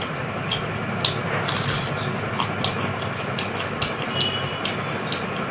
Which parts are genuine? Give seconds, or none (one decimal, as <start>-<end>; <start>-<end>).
0.0-5.5